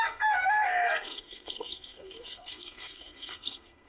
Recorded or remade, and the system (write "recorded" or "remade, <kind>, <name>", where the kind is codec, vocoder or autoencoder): remade, codec, SNAC